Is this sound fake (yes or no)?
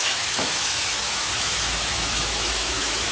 yes